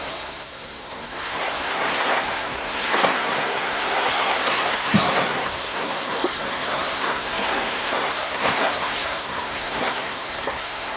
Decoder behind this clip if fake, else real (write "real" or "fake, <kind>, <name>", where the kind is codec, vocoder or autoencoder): fake, codec, SNAC